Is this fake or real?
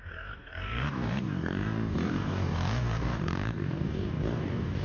fake